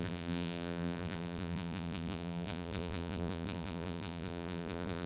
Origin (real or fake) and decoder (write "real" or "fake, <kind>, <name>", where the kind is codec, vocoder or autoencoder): fake, vocoder, BigVGAN v2